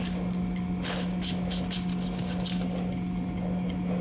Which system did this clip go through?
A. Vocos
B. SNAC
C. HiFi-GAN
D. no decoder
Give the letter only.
D